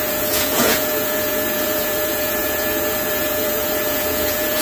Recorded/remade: remade